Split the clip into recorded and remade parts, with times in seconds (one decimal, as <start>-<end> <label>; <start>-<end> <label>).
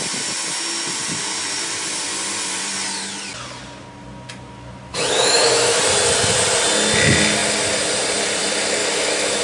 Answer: 0.0-4.9 recorded; 4.9-5.8 remade; 5.8-8.8 recorded; 8.8-9.4 remade